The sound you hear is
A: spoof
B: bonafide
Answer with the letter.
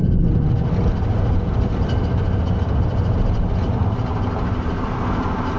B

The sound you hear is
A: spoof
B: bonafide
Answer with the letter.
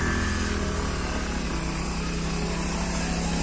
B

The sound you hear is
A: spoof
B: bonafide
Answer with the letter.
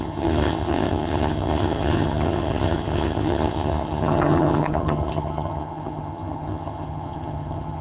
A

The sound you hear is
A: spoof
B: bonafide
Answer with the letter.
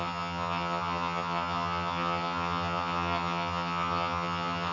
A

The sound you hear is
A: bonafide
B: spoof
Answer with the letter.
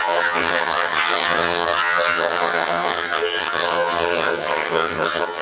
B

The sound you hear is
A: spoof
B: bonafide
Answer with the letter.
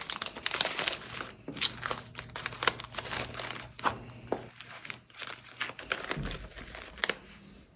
B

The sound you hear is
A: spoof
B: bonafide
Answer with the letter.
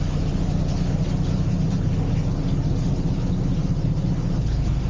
B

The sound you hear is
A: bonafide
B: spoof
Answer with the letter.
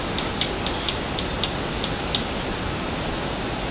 A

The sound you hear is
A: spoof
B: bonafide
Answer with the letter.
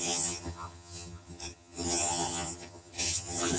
A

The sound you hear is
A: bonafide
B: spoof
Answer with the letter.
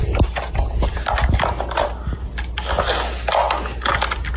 A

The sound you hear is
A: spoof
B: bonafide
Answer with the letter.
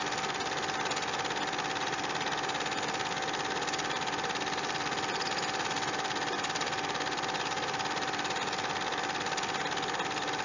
B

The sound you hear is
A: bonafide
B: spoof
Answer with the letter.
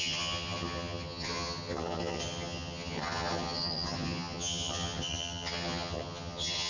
B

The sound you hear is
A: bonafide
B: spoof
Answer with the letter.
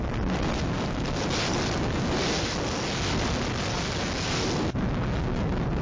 A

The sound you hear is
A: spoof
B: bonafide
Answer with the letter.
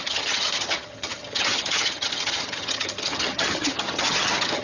A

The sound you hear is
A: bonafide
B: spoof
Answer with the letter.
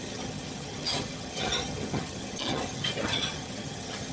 B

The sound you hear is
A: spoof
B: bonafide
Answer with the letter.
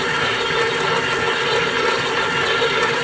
B